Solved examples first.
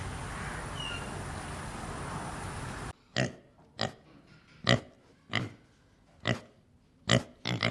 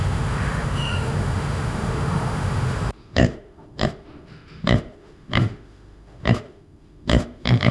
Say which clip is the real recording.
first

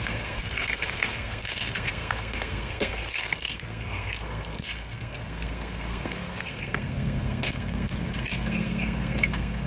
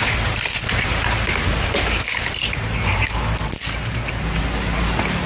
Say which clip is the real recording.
second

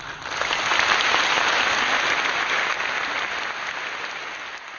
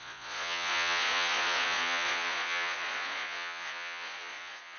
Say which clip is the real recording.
first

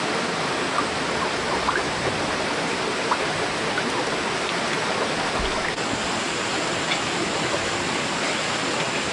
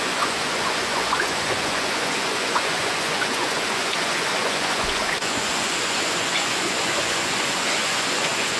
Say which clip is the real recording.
first